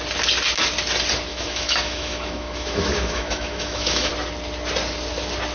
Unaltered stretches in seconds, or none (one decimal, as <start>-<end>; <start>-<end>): 0.0-1.3; 4.1-5.5